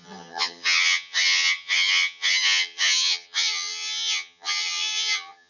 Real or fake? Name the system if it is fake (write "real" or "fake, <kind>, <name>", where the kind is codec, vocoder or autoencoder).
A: fake, vocoder, HiFi-GAN